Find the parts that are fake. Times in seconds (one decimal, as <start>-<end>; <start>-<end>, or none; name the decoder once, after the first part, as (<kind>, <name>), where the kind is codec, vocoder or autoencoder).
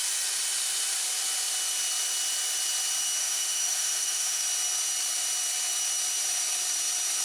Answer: 3.2-4.4 (autoencoder, DAC-VAE)